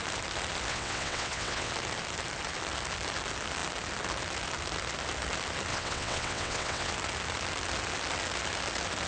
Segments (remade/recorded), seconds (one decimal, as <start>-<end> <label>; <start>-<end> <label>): 0.0-0.7 recorded; 0.7-1.7 remade; 1.7-5.7 recorded; 5.7-6.9 remade; 6.9-9.1 recorded